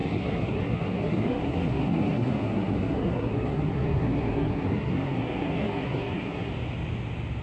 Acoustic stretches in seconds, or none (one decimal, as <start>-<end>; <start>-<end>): 6.5-7.4